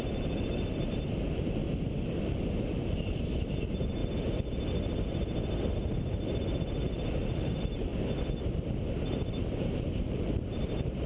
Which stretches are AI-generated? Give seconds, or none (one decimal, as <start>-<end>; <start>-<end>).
0.0-1.6; 2.2-4.0; 7.1-7.9; 9.0-11.1